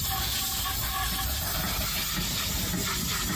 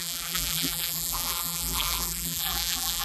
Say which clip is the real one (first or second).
first